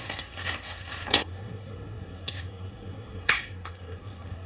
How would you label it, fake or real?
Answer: fake